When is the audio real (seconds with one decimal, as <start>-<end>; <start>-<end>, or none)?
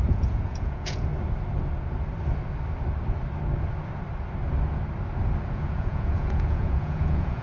1.1-5.5